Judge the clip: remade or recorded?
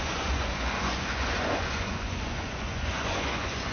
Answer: remade